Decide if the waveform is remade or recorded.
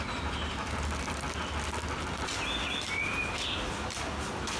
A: recorded